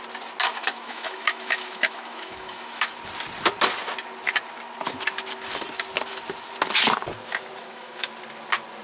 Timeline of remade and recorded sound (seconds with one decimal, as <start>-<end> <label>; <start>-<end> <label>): 0.0-0.4 recorded; 0.4-2.9 remade; 2.9-7.6 recorded; 7.6-8.1 remade; 8.1-8.8 recorded